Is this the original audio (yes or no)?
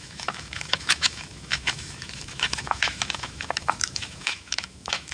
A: no